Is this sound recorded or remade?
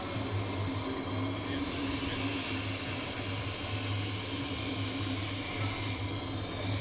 recorded